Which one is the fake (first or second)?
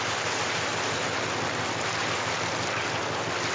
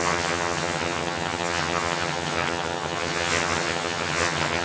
second